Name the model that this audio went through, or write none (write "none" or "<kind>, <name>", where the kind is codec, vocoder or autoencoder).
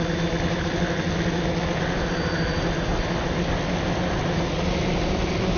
none